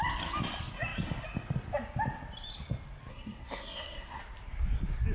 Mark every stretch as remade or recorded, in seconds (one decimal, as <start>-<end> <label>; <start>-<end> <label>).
0.0-3.1 recorded; 3.1-4.2 remade; 4.2-5.1 recorded